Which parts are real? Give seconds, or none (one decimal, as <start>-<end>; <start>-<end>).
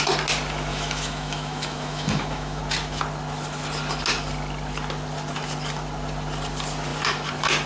0.0-0.7; 2.6-7.7